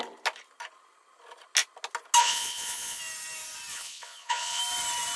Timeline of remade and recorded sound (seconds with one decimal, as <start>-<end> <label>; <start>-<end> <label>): 0.0-2.2 recorded; 2.2-3.0 remade; 3.0-3.7 recorded; 3.7-4.6 remade; 4.6-5.2 recorded